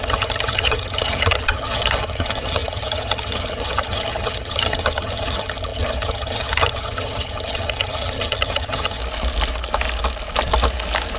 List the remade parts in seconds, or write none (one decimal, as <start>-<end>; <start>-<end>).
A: 0.0-9.0